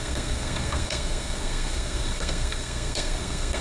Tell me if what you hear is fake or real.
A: fake